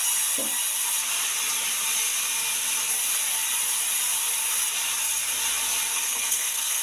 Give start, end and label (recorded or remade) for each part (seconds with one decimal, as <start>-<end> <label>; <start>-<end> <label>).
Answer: 0.0-5.9 recorded; 5.9-6.8 remade

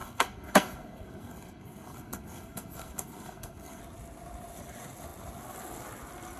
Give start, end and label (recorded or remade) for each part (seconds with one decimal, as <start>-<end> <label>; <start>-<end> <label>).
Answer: 0.0-3.8 remade; 3.8-6.4 recorded

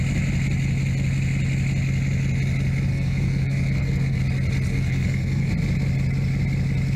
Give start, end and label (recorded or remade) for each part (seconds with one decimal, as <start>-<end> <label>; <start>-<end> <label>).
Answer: 0.0-2.9 recorded; 2.9-4.2 remade; 4.2-4.7 recorded; 4.7-5.5 remade; 5.5-7.0 recorded

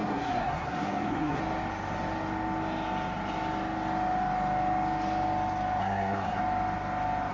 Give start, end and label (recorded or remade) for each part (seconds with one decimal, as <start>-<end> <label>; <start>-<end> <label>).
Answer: 0.0-1.4 remade; 1.4-5.8 recorded; 5.8-6.4 remade; 6.4-7.3 recorded

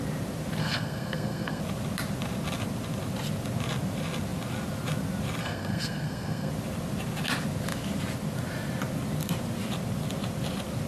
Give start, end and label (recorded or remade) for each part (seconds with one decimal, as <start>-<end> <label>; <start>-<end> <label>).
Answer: 0.0-0.6 recorded; 0.6-1.6 remade; 1.6-5.4 recorded; 5.4-6.5 remade; 6.5-10.9 recorded